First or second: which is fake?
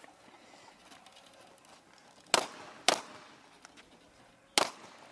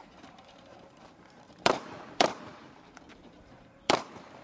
second